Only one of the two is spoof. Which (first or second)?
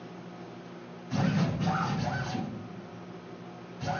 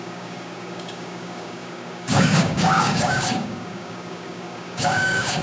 second